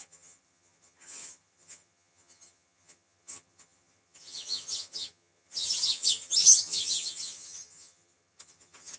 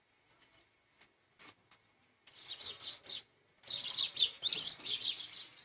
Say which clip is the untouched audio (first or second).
second